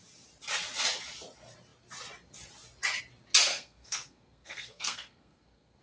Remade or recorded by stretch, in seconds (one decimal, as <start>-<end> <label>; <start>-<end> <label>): 0.0-3.5 recorded; 3.5-5.8 remade